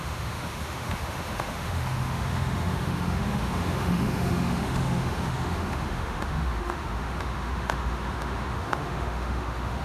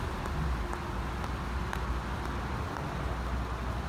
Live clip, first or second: second